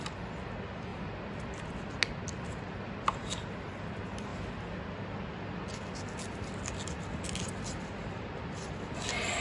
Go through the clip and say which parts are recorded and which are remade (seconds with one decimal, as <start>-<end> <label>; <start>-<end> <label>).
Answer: 0.0-9.4 recorded